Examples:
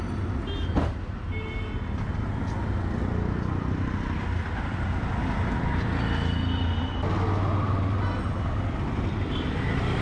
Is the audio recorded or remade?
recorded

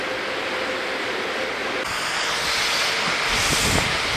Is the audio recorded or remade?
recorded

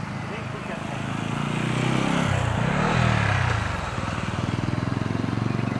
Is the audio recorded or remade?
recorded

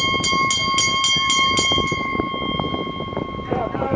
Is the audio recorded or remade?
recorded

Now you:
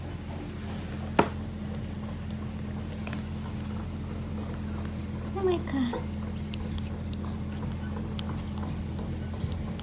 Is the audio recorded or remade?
recorded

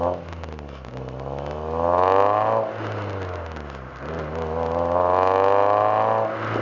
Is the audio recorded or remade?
recorded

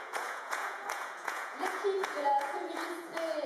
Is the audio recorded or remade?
remade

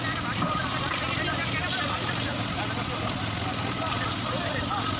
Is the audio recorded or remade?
recorded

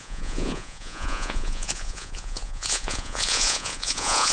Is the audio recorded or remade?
remade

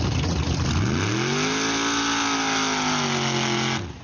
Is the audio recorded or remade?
recorded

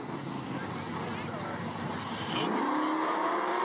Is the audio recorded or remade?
recorded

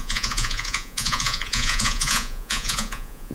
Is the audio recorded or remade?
remade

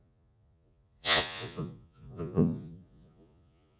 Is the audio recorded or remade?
remade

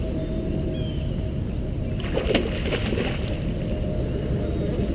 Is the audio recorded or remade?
recorded